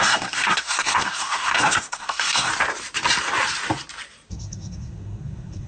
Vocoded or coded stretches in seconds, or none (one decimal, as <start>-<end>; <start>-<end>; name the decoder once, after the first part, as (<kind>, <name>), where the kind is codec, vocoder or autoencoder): 0.0-2.5 (codec, SNAC); 4.3-5.7